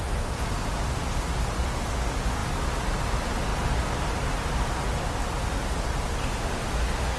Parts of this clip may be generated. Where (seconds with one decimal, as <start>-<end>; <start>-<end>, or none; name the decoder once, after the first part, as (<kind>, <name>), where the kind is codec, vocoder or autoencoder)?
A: 6.2-6.8 (autoencoder, DAC-VAE)